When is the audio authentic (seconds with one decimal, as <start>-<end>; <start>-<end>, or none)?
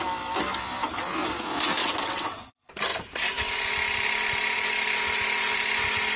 0.0-1.8; 2.5-6.2